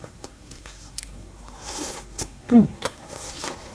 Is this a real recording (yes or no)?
no